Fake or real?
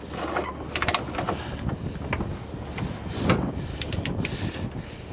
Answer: real